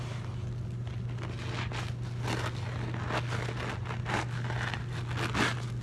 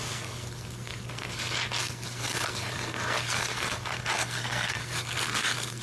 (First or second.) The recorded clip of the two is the first